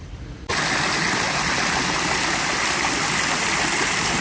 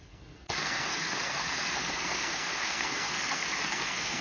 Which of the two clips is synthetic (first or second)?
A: second